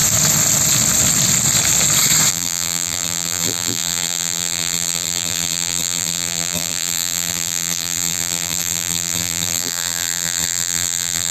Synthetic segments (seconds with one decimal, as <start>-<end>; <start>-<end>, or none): 2.3-11.3